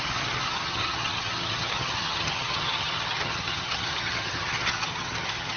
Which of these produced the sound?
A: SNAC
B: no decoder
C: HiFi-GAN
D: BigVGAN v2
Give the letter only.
C